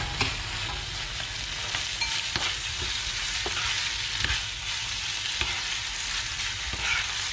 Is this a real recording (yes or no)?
yes